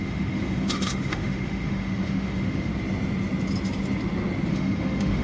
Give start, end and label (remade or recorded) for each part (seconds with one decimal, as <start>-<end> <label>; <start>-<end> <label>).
0.0-2.7 remade; 2.7-4.5 recorded; 4.5-5.2 remade